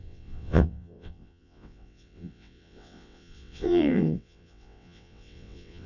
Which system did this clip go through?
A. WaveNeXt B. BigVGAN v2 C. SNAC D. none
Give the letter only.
A